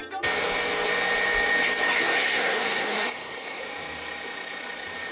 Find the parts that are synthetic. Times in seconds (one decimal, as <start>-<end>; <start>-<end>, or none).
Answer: 2.0-3.6